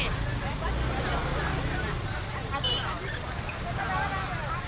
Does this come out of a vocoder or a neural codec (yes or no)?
no